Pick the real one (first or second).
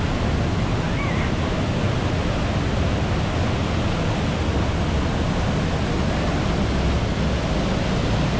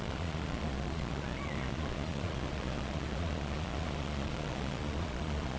first